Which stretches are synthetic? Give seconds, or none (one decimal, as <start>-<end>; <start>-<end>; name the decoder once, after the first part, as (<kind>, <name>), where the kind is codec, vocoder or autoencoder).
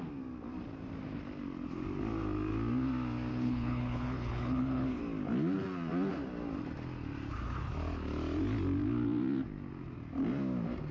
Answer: 3.3-5.0 (codec, HILCodec)